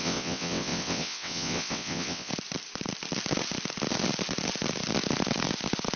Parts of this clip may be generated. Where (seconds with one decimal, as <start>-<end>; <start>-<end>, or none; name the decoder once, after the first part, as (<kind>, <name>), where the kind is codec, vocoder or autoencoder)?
0.0-2.3 (vocoder, WaveNeXt)

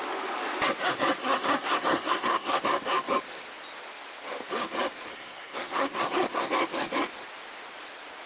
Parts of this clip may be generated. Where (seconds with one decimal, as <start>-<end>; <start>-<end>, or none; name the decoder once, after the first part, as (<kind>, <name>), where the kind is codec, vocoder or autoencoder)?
1.2-2.6 (codec, SNAC); 5.1-6.5

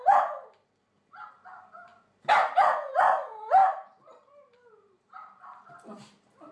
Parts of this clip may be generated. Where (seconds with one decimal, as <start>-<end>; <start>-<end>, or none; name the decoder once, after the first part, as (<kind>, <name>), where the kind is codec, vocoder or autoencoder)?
3.6-5.7 (vocoder, BigVGAN v2)

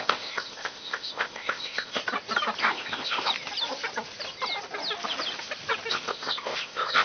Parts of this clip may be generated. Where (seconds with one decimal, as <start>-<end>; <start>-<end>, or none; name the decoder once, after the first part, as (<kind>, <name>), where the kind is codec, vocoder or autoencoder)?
0.0-2.0 (codec, ZipCodec); 2.6-3.3; 5.9-7.0

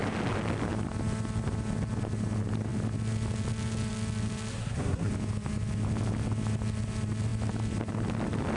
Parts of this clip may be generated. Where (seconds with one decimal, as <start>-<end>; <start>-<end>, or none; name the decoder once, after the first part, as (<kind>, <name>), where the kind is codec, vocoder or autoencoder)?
4.5-5.1 (codec, SNAC)